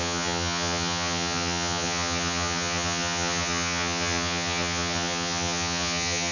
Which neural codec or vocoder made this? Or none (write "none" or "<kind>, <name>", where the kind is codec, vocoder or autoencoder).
vocoder, HiFi-GAN